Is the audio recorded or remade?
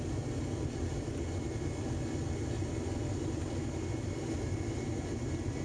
recorded